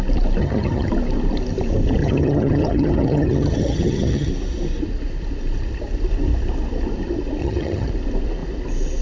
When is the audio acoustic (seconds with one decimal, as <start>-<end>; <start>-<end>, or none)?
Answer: 0.0-0.4; 0.9-2.0; 4.3-7.4; 7.9-9.0